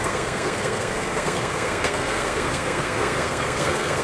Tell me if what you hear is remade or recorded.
remade